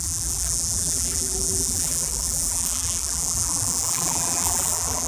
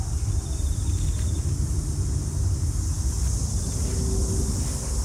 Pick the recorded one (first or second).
second